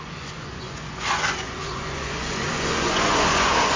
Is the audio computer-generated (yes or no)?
yes